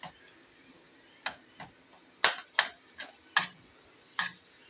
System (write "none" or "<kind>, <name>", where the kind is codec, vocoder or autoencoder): none